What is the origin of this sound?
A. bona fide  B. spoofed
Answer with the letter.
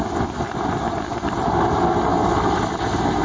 A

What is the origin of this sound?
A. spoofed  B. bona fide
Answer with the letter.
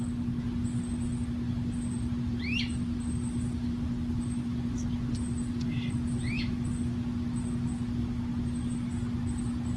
B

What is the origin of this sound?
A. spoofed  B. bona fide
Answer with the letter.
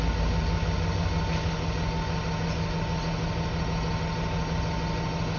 B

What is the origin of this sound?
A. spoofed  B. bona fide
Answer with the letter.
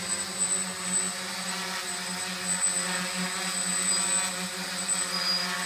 B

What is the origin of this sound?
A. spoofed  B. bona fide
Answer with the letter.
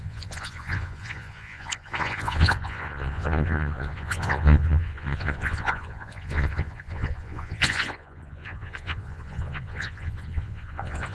A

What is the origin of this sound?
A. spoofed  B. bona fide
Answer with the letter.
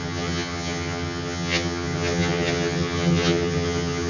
A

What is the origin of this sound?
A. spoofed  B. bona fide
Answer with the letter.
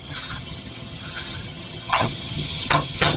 A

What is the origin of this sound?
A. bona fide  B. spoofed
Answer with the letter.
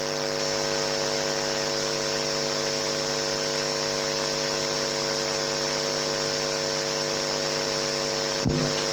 A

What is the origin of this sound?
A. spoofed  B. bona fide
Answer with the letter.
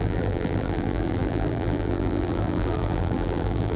A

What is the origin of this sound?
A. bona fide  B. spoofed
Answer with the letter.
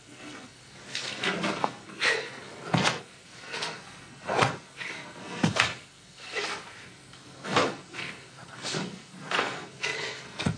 B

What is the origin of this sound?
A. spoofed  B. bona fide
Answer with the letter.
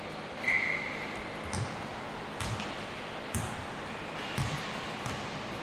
B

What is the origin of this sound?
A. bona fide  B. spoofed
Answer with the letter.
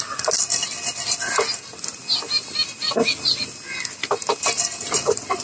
A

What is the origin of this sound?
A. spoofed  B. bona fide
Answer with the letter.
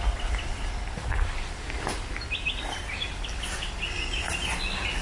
B